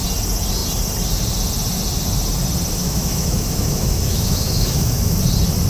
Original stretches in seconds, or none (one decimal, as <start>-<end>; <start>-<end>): 0.0-2.8; 5.2-5.7